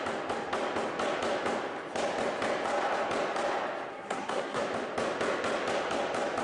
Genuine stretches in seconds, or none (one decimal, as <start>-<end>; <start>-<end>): 0.0-3.9; 4.6-6.4